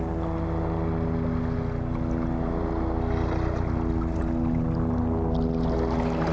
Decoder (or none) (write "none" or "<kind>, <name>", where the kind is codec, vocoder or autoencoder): none